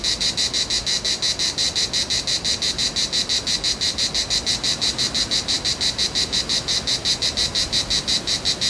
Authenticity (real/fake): real